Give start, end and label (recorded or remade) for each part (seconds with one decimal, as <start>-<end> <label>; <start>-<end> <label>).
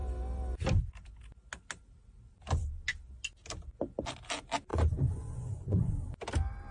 0.0-4.7 recorded; 4.7-5.9 remade; 5.9-6.7 recorded